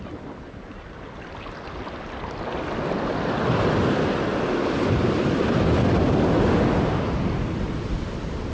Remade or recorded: recorded